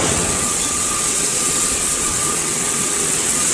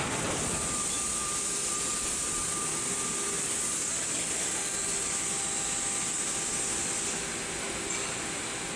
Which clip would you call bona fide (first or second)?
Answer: second